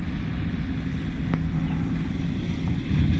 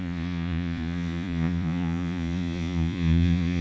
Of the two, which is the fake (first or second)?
second